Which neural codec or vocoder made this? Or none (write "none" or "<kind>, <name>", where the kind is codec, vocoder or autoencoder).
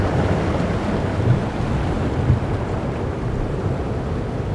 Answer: none